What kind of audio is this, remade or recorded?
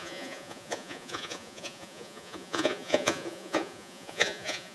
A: remade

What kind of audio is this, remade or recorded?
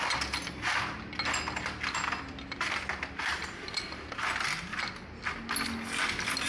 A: recorded